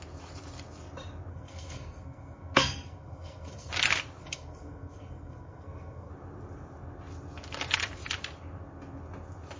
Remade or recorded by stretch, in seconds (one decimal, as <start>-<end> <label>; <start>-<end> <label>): 0.0-1.3 recorded; 1.3-3.7 remade; 3.7-4.2 recorded; 4.2-6.1 remade; 6.1-9.6 recorded